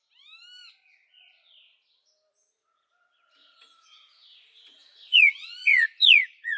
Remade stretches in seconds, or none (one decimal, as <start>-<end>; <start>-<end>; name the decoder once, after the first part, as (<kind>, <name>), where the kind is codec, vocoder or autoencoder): 3.4-6.6 (vocoder, Vocos)